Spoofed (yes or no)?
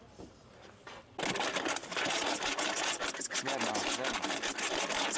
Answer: no